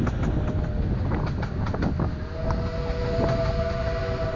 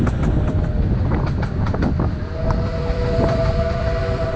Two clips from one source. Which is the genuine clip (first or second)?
first